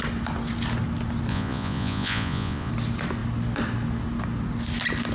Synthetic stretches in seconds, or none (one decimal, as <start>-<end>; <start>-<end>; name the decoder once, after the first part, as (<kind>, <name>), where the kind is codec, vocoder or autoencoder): 1.3-2.7 (vocoder, Vocos)